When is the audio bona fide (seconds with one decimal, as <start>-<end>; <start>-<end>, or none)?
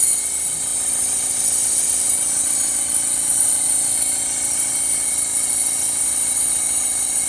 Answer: 0.0-0.7; 4.8-7.3